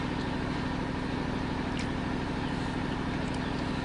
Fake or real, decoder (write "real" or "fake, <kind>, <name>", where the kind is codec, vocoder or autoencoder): real